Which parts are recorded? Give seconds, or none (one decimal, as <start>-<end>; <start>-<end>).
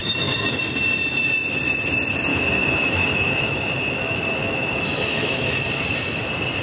0.6-2.3; 5.6-6.6